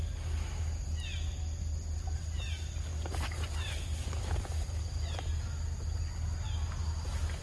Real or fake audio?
real